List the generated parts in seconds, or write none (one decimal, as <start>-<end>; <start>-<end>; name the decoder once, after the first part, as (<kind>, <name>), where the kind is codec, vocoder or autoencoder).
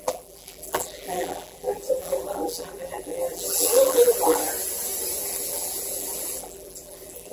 0.0-4.4 (vocoder, BigVGAN v2); 5.2-7.3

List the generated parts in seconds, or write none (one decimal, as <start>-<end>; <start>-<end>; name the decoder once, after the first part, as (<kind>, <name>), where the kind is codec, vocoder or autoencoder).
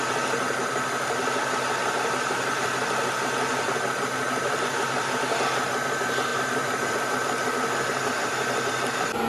6.3-6.9 (vocoder, BigVGAN v2)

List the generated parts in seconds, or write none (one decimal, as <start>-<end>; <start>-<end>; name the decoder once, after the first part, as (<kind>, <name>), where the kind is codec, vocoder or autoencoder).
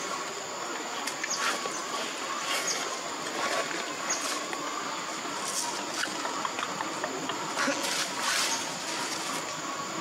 none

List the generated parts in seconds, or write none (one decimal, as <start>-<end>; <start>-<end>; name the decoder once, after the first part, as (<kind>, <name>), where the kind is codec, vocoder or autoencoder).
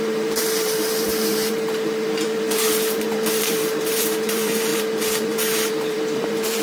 0.0-6.6 (vocoder, BigVGAN v2)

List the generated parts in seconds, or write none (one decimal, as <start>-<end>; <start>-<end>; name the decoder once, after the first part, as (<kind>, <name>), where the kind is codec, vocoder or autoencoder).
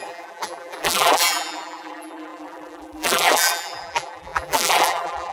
0.0-5.3 (vocoder, BigVGAN v2)